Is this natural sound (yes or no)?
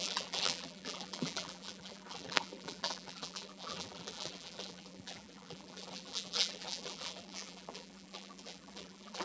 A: no